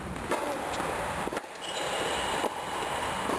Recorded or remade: recorded